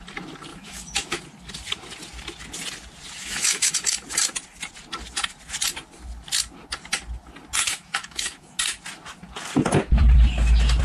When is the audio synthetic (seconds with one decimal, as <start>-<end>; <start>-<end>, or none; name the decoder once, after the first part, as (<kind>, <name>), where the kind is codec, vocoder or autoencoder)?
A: 0.5-1.2 (autoencoder, DAC-VAE); 3.2-3.7; 7.6-8.6